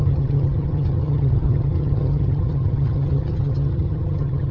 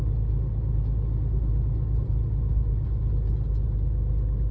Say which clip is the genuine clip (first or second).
second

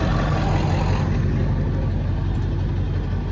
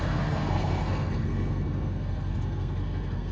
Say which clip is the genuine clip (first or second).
first